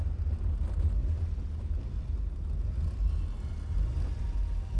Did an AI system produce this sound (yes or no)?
no